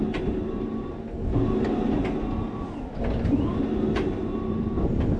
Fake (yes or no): no